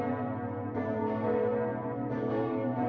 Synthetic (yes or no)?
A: yes